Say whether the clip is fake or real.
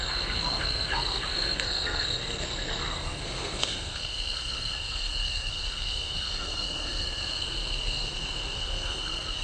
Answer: fake